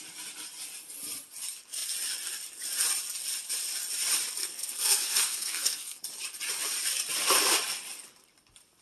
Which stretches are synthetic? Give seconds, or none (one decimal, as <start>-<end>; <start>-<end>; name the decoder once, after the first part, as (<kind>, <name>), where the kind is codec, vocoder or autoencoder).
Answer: 4.4-6.0 (codec, SNAC)